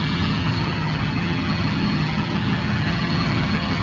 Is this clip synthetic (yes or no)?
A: yes